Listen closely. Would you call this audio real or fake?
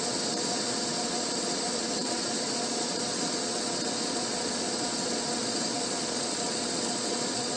fake